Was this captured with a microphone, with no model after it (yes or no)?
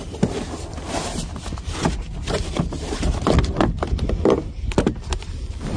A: yes